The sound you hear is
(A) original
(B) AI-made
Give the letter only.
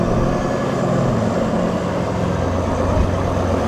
A